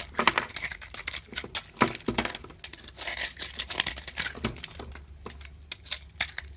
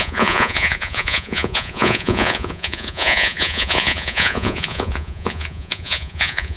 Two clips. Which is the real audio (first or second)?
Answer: first